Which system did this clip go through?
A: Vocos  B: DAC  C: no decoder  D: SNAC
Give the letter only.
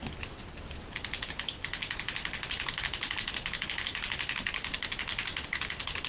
C